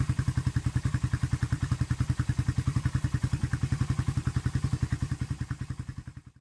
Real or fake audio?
real